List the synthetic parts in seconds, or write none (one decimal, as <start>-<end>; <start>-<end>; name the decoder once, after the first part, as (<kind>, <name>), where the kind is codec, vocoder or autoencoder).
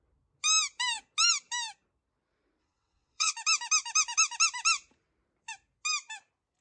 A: 2.6-3.3 (vocoder, WaveNeXt)